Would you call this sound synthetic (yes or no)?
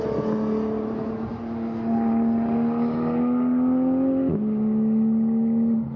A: no